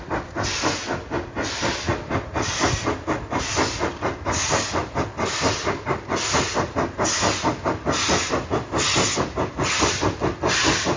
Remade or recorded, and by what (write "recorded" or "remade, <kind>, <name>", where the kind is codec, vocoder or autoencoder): recorded